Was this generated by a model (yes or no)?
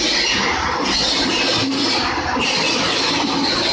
no